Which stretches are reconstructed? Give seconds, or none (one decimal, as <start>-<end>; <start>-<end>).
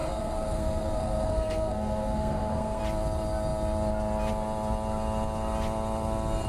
0.0-2.8